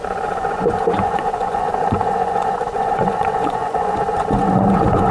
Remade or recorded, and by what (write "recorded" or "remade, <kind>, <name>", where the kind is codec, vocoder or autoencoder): remade, vocoder, Vocos